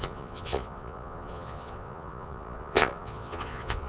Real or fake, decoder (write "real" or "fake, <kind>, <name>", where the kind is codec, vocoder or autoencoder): fake, vocoder, Vocos